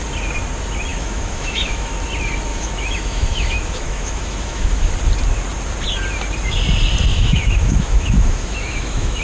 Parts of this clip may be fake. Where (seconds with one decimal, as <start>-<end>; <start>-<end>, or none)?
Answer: 0.9-1.9; 2.5-4.9; 7.1-9.2